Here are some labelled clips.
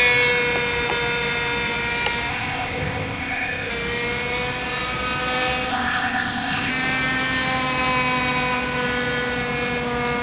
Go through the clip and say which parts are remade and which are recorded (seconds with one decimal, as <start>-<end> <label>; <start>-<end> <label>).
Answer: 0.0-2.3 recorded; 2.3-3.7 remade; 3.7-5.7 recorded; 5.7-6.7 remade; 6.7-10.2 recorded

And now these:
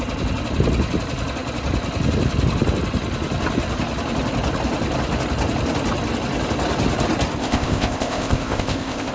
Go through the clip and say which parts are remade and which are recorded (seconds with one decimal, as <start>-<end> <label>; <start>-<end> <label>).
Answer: 0.0-7.4 recorded; 7.4-9.1 remade

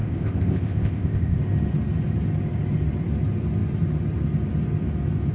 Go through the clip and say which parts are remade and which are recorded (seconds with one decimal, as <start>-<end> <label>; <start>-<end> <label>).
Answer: 0.0-1.4 remade; 1.4-5.3 recorded

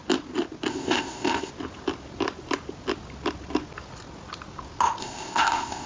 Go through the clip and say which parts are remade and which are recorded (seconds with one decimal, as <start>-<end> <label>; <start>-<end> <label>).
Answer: 0.0-0.7 recorded; 0.7-1.5 remade; 1.5-5.0 recorded; 5.0-5.9 remade